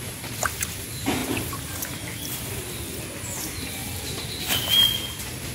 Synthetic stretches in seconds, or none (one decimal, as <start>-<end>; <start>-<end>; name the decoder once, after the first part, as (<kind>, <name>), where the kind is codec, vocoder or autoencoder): none